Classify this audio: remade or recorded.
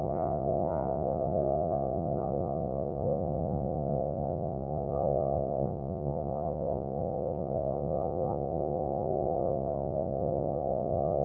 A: remade